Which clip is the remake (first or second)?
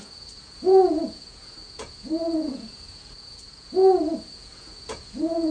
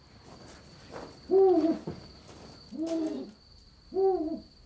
first